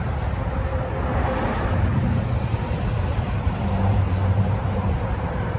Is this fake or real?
fake